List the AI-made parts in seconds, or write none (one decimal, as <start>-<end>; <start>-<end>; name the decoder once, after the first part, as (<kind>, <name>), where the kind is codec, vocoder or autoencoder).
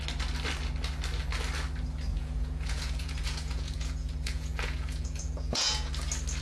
2.1-5.9 (vocoder, Vocos)